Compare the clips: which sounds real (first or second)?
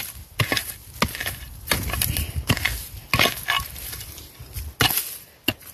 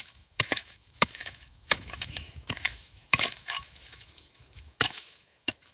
first